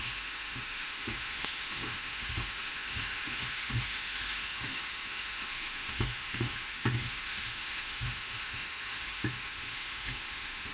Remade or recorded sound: remade